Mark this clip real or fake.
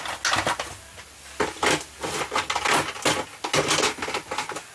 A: real